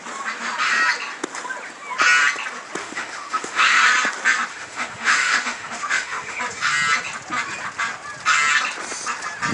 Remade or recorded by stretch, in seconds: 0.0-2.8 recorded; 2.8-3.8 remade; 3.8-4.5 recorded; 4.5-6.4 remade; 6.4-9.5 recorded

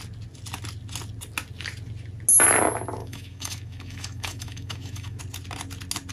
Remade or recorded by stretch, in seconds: 0.0-3.0 recorded; 3.0-5.2 remade; 5.2-6.1 recorded

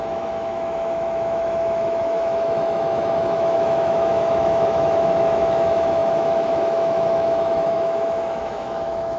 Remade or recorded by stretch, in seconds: 0.0-9.2 remade

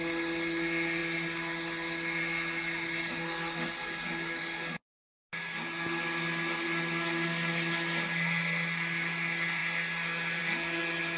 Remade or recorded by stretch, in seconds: 0.0-11.2 recorded

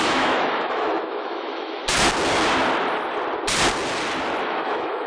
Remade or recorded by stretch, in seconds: 0.0-1.8 remade; 1.8-4.4 recorded; 4.4-5.1 remade